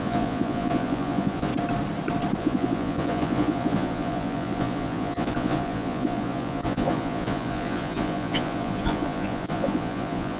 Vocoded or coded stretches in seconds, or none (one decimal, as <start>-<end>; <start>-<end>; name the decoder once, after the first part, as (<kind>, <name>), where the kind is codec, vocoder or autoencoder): 0.0-1.5 (vocoder, Vocos); 2.4-10.4